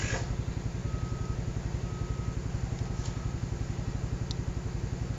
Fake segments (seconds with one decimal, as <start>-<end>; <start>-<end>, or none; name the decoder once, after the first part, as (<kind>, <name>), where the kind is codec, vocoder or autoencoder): none